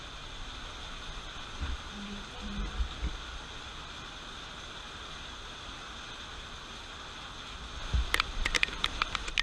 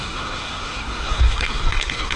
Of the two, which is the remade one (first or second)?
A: second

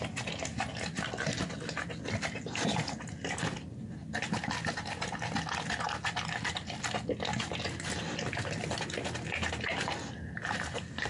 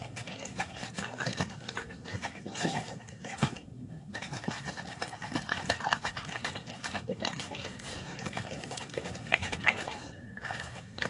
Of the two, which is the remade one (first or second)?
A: second